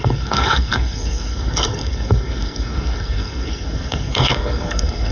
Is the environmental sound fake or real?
fake